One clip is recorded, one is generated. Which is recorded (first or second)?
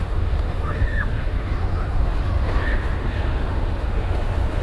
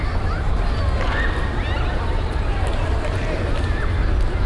second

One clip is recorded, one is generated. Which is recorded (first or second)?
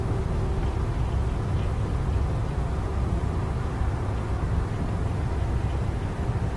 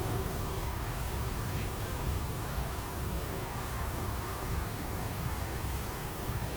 first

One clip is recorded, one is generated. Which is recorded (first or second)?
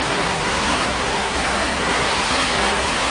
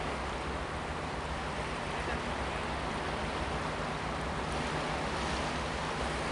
second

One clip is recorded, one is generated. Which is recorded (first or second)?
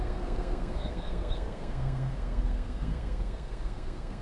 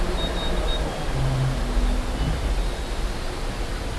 second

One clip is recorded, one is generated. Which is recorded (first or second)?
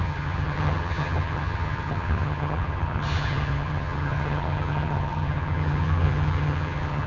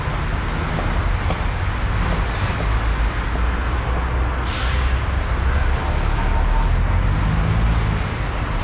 second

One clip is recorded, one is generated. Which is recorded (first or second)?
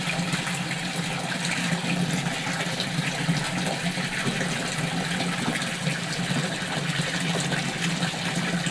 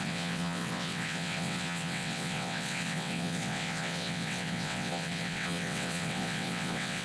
first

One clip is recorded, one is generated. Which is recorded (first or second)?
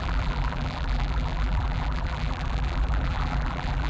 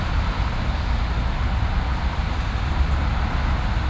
second